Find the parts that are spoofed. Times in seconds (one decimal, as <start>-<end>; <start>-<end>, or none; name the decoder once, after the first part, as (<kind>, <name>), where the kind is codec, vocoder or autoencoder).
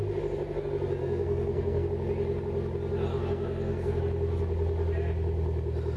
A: 1.0-1.9 (codec, SNAC); 3.1-4.0